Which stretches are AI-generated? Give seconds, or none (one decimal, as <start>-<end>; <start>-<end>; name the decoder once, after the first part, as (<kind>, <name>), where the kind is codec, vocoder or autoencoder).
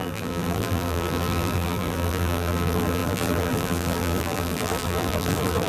0.0-5.7 (vocoder, BigVGAN v2)